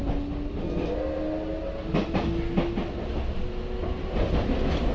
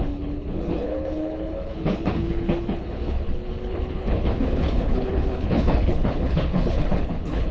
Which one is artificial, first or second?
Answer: second